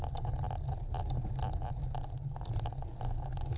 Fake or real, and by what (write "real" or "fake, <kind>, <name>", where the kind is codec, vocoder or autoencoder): real